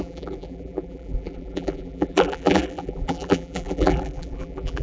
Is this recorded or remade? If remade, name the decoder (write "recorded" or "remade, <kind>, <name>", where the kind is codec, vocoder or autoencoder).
remade, vocoder, BigVGAN v2